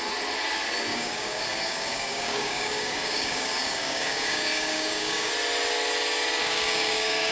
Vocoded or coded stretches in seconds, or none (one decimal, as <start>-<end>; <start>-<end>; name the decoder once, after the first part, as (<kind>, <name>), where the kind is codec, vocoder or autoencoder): 0.9-5.3 (codec, DAC); 6.4-7.3